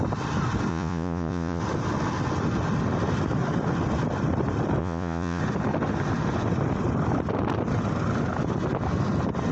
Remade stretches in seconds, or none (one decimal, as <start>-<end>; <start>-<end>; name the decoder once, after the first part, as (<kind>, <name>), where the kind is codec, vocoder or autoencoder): 0.7-1.6 (vocoder, Vocos); 4.8-5.4

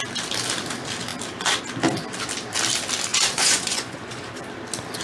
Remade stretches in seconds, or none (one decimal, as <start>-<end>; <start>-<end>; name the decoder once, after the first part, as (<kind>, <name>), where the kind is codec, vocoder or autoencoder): 3.1-4.2 (vocoder, Vocos)